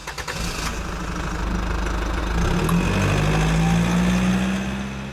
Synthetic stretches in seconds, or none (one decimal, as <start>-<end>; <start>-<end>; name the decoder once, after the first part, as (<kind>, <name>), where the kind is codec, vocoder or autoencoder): none